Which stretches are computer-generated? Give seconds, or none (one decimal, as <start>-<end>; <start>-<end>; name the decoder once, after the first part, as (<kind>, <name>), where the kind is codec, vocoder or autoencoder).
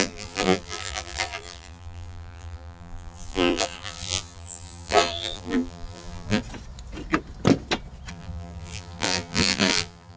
0.0-6.4 (vocoder, BigVGAN v2); 8.1-10.2